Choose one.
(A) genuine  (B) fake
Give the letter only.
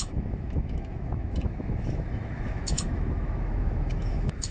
B